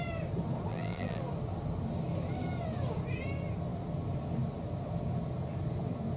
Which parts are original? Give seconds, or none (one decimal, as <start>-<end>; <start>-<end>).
0.0-0.7; 1.2-6.2